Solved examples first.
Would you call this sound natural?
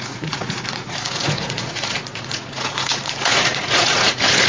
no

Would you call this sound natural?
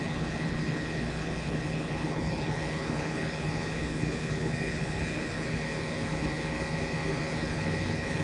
no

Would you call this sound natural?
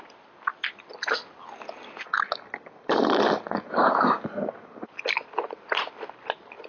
yes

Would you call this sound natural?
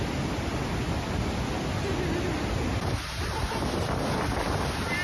yes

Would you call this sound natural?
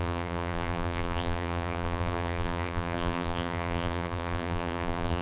no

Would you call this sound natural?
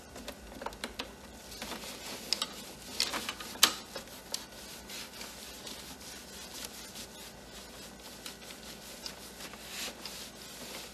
yes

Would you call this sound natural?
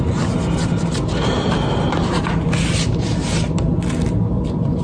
yes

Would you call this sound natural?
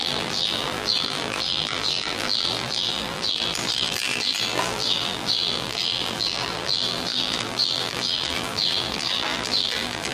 no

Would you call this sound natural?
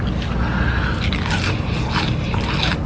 yes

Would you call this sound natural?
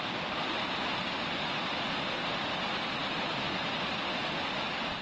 yes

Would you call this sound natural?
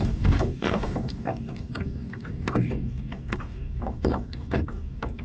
no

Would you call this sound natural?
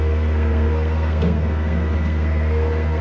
no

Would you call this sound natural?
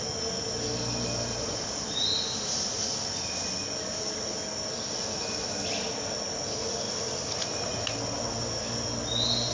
yes